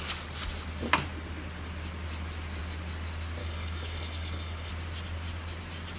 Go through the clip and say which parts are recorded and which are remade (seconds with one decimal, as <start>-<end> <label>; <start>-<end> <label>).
0.0-3.4 recorded; 3.4-4.7 remade; 4.7-6.0 recorded

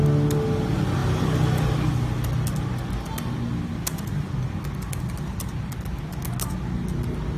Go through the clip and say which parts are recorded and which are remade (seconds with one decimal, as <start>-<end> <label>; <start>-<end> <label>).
0.0-7.4 recorded

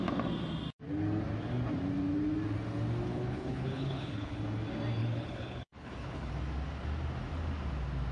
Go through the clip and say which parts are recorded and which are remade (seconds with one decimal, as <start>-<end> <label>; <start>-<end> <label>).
0.0-3.1 recorded; 3.1-4.4 remade; 4.4-5.0 recorded; 5.0-6.3 remade; 6.3-8.1 recorded

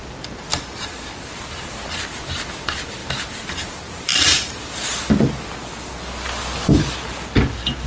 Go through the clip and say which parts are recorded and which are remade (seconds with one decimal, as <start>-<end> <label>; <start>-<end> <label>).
0.0-0.5 recorded; 0.5-1.1 remade; 1.1-3.0 recorded; 3.0-5.1 remade; 5.1-7.9 recorded

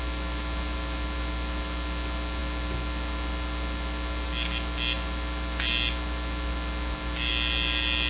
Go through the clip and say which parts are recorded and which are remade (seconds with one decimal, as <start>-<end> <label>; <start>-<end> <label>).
0.0-8.1 recorded

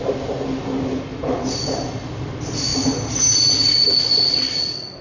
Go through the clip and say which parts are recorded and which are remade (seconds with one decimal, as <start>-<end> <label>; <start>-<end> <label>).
0.0-1.1 recorded; 1.1-1.6 remade; 1.6-5.0 recorded

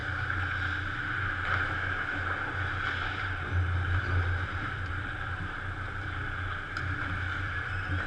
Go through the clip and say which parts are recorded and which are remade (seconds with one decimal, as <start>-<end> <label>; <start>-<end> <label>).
0.0-4.0 recorded; 4.0-8.1 remade

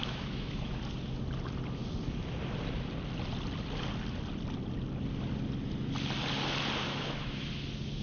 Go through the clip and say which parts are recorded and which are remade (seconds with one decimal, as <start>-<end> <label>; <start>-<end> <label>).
0.0-0.8 remade; 0.8-6.8 recorded; 6.8-7.4 remade; 7.4-8.0 recorded